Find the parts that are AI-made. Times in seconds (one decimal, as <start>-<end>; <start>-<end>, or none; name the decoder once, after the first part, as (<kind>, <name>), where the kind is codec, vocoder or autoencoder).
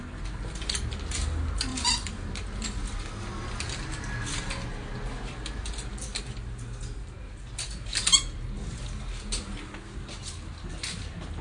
none